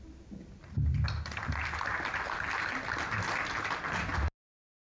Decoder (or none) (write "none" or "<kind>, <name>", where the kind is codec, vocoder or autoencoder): none